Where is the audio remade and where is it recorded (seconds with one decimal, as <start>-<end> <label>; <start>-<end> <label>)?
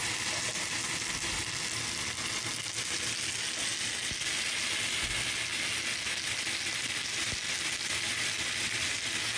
0.0-9.4 recorded